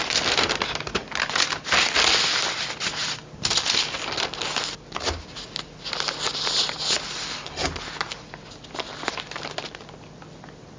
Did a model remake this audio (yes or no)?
no